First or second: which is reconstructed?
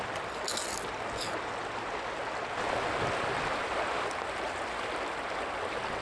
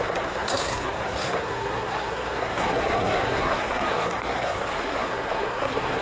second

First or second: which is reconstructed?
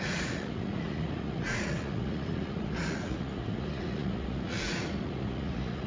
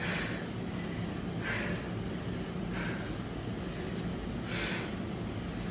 first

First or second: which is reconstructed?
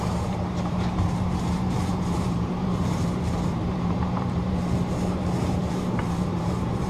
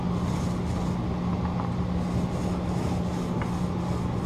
first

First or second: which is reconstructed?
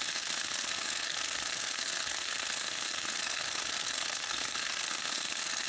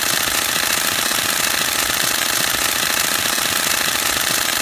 first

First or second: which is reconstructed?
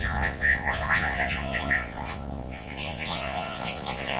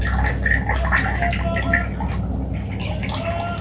first